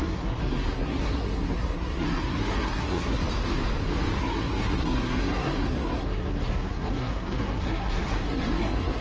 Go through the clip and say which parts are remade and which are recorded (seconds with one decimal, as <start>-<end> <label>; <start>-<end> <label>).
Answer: 0.0-3.2 remade; 3.2-4.2 recorded; 4.2-9.0 remade